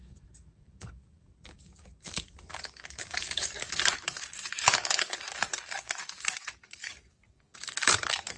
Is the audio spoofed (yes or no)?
yes